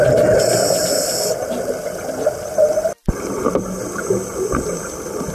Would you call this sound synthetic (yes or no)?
no